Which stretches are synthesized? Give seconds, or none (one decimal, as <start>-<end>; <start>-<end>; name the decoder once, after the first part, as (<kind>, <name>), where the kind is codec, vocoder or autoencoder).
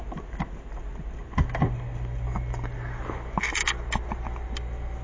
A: none